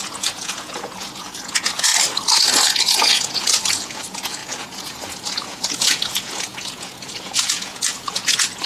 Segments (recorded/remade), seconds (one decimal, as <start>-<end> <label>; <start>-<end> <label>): 0.0-1.9 remade; 1.9-2.8 recorded; 2.8-8.7 remade